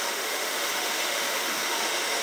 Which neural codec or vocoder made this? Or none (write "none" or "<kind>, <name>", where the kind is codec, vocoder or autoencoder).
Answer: autoencoder, DAC-VAE